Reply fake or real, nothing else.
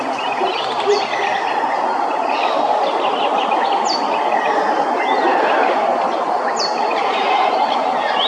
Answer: real